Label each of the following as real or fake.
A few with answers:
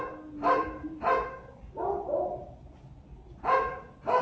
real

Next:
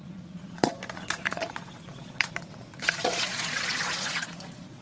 fake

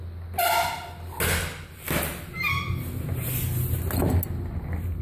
real